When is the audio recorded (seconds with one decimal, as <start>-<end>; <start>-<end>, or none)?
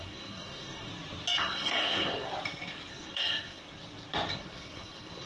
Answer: 0.9-1.4; 2.3-2.9; 3.6-4.3